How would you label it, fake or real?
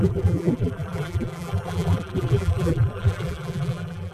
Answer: fake